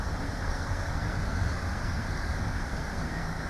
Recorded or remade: remade